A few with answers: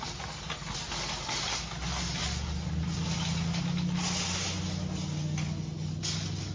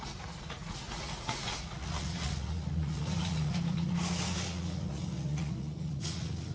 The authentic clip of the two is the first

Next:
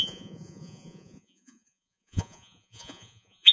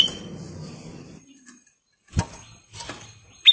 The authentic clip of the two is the second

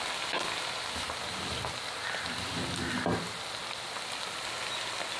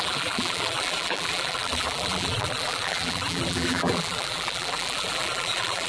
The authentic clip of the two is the first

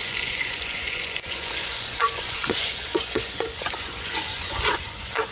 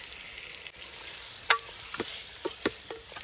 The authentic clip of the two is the second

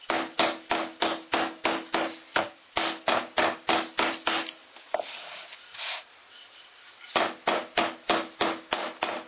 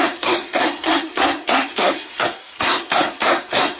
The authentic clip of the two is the first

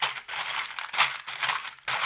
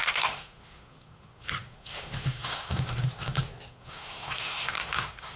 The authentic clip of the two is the first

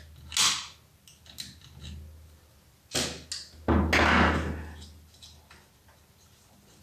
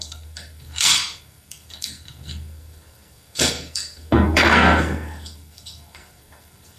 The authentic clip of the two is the first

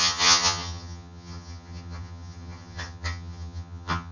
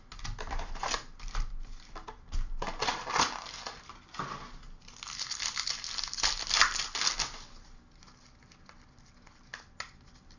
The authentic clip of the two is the second